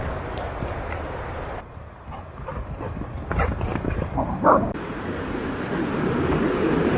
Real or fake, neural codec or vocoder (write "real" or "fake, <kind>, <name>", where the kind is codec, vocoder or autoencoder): fake, vocoder, BigVGAN v2